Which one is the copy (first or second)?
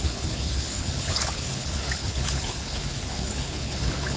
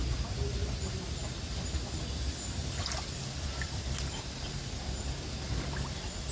first